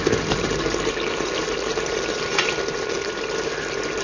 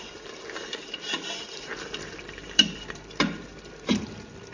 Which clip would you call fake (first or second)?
second